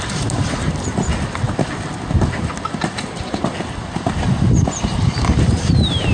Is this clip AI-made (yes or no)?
no